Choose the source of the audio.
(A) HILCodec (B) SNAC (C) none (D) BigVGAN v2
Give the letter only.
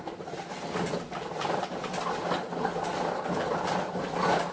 C